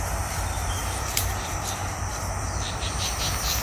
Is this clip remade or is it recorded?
remade